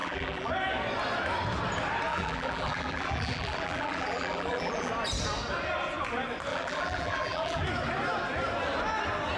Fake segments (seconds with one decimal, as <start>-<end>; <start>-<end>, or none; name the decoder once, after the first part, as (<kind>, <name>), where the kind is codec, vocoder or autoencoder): 0.0-0.5 (vocoder, BigVGAN v2); 2.1-4.9; 6.5-7.6